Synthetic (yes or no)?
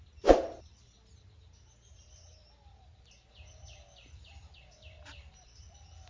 no